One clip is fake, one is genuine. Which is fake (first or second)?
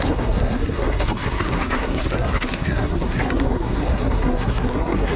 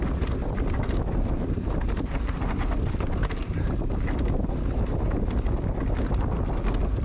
first